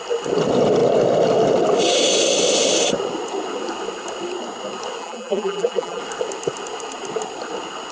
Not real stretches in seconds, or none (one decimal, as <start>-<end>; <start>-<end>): 5.0-6.0